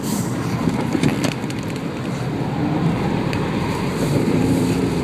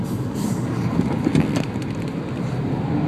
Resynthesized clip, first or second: first